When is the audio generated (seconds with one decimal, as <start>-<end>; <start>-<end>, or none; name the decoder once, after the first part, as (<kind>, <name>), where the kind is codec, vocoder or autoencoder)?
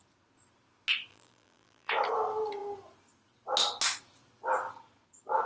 1.1-1.9 (vocoder, BigVGAN v2)